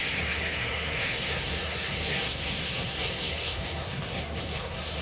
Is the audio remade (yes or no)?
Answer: yes